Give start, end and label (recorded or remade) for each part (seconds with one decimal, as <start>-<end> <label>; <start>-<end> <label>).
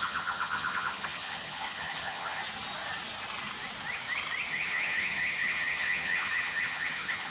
0.0-2.4 remade; 2.4-4.5 recorded; 4.5-7.3 remade